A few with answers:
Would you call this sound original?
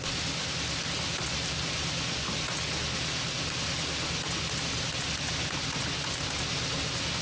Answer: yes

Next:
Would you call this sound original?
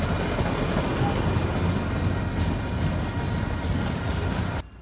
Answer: yes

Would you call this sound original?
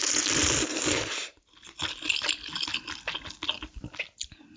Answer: yes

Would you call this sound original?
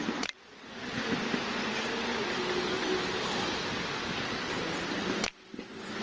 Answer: yes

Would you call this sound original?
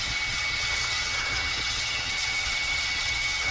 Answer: no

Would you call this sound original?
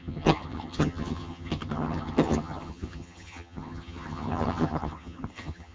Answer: no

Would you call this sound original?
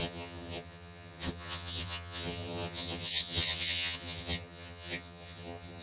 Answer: no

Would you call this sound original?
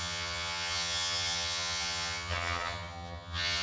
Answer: no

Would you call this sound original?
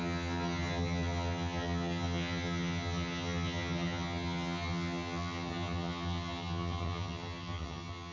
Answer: no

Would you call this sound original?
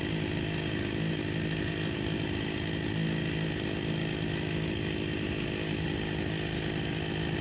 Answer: yes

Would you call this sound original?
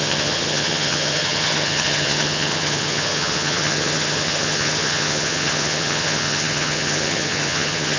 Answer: no